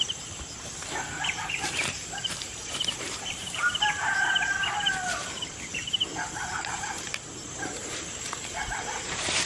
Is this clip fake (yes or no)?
yes